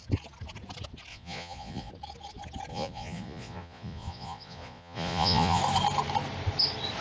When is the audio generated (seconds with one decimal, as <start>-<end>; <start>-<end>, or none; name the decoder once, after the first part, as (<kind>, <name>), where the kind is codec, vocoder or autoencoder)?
1.1-1.9 (vocoder, Vocos); 2.7-5.6